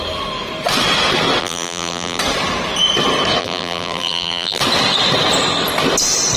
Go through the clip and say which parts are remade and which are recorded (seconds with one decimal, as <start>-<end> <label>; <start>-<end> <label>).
0.0-1.4 recorded; 1.4-2.2 remade; 2.2-3.4 recorded; 3.4-4.6 remade; 4.6-6.4 recorded